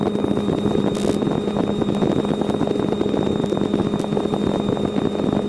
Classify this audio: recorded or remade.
recorded